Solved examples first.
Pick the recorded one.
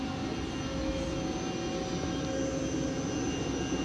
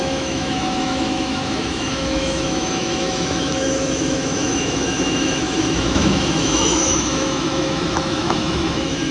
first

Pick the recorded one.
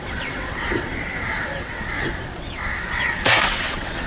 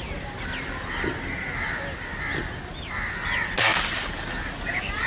second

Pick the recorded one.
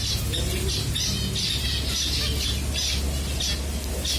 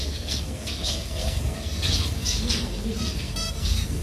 first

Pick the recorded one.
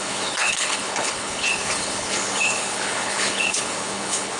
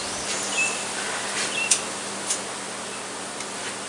second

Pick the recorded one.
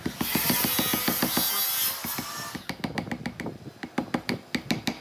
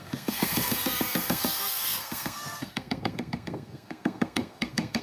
first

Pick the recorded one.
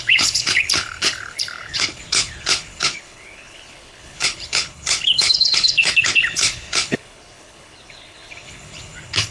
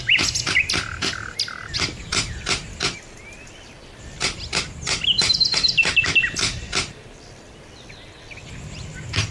second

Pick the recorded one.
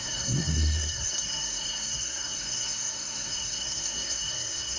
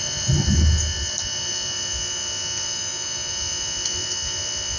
second